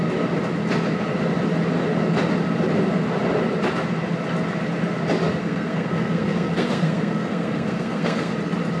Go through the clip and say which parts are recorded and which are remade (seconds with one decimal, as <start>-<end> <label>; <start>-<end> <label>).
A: 0.0-5.4 recorded; 5.4-8.3 remade; 8.3-8.8 recorded